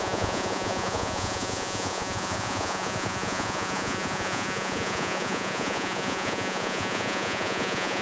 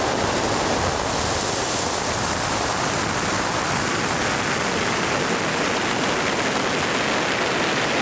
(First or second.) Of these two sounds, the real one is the second